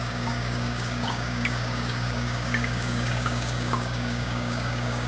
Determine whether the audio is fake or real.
fake